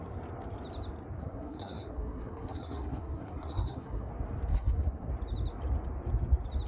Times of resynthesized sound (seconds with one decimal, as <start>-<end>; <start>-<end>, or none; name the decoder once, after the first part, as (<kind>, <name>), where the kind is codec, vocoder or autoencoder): 1.2-4.1 (codec, SNAC); 4.5-5.1